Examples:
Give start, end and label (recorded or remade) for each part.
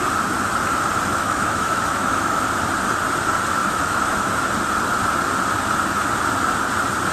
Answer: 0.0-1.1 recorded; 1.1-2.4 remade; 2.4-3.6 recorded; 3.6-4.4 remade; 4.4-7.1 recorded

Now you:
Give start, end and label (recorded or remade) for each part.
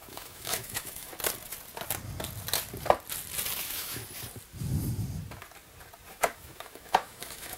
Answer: 0.0-1.1 remade; 1.1-3.6 recorded; 3.6-4.0 remade; 4.0-6.1 recorded; 6.1-7.6 remade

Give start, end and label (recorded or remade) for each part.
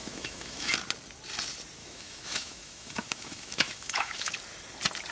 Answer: 0.0-0.7 remade; 0.7-1.8 recorded; 1.8-4.3 remade; 4.3-5.1 recorded